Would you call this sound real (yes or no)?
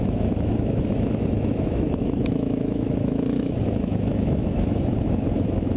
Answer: no